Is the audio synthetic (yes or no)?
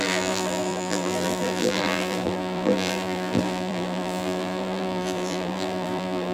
yes